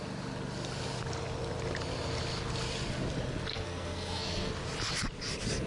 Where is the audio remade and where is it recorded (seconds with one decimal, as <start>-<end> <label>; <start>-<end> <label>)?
0.0-3.5 recorded; 3.5-4.5 remade; 4.5-5.7 recorded

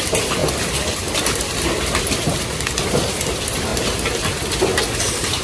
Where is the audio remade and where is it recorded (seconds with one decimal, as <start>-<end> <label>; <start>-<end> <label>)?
0.0-3.7 remade; 3.7-5.0 recorded; 5.0-5.4 remade

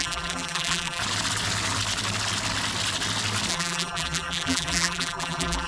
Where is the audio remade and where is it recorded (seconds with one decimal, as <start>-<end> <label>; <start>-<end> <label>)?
0.0-1.0 remade; 1.0-3.5 recorded; 3.5-5.7 remade

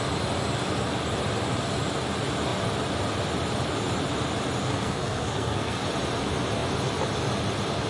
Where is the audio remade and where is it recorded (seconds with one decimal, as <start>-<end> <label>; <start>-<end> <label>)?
0.0-4.6 recorded; 4.6-5.8 remade; 5.8-7.9 recorded

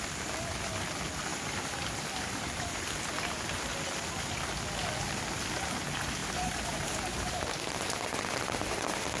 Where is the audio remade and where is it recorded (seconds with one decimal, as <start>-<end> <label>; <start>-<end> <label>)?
0.0-1.3 recorded; 1.3-3.4 remade; 3.4-6.2 recorded; 6.2-6.9 remade; 6.9-9.2 recorded